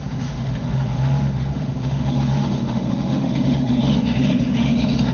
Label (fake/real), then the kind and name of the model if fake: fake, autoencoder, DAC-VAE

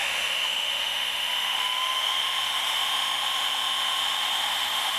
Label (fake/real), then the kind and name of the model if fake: fake, autoencoder, DAC-VAE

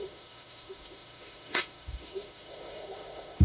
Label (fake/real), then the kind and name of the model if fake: fake, autoencoder, DAC-VAE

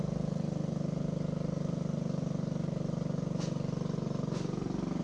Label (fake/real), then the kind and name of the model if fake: real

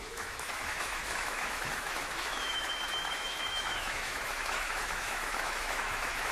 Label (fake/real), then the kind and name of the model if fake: fake, autoencoder, DAC-VAE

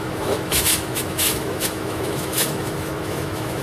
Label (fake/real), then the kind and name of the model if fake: fake, autoencoder, DAC-VAE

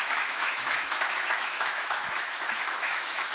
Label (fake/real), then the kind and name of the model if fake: fake, autoencoder, DAC-VAE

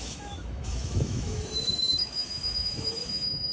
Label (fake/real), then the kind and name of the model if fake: fake, autoencoder, DAC-VAE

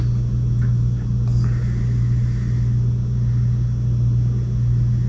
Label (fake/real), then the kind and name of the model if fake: real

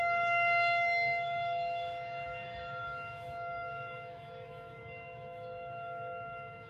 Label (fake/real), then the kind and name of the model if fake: fake, autoencoder, DAC-VAE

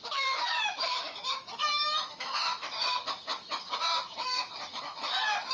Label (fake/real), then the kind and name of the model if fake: fake, autoencoder, DAC-VAE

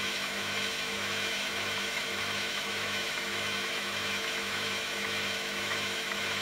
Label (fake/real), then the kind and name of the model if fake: fake, autoencoder, DAC-VAE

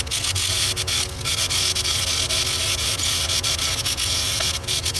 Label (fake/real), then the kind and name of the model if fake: real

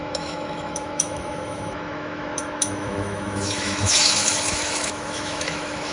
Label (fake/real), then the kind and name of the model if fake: fake, autoencoder, DAC-VAE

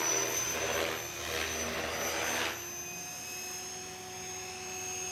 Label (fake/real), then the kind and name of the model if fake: real